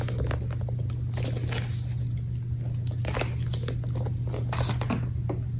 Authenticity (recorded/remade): recorded